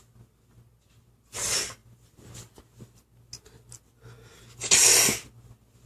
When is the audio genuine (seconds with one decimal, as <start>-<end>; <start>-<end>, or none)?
0.0-5.9